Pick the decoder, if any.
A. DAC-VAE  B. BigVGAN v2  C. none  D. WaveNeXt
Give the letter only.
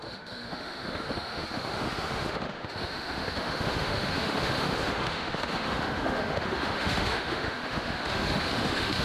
A